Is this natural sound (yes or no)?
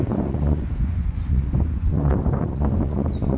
no